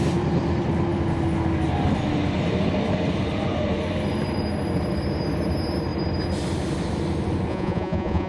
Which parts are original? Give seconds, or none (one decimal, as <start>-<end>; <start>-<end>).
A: 0.0-7.5